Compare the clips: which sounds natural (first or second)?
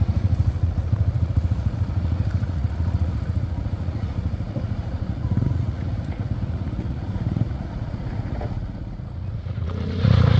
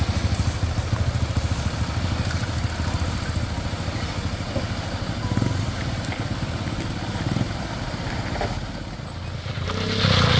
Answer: second